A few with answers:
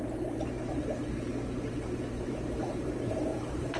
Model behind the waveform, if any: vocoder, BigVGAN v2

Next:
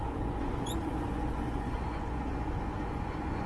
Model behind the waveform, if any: vocoder, Vocos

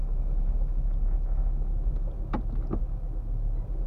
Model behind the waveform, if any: none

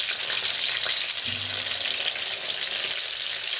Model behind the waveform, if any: none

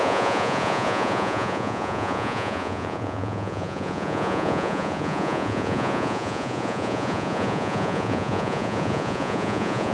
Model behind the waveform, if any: vocoder, Vocos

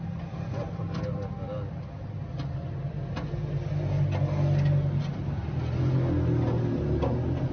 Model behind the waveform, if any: none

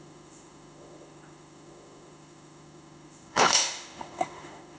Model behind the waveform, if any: autoencoder, DAC-VAE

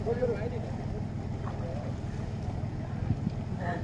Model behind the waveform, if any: none